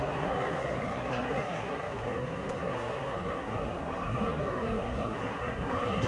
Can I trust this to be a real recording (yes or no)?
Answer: no